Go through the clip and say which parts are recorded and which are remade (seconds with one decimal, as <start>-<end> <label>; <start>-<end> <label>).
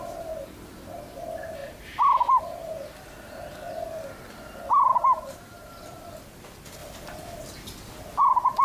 0.0-4.9 recorded; 4.9-5.7 remade; 5.7-8.6 recorded